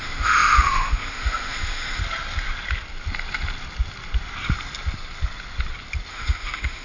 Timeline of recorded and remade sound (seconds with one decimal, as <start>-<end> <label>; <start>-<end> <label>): 0.0-2.0 remade; 2.0-6.1 recorded; 6.1-6.8 remade